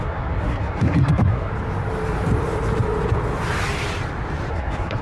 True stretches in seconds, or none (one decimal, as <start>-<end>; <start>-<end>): 1.5-4.5